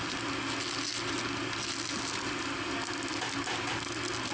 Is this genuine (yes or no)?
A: yes